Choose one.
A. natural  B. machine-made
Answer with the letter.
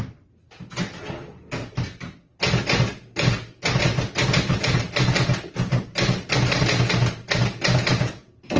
A